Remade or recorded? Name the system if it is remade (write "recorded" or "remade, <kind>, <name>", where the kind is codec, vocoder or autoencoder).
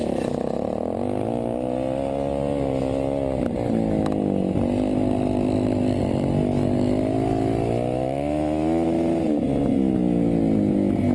recorded